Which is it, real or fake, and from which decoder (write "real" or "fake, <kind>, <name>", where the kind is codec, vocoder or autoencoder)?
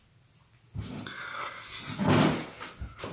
real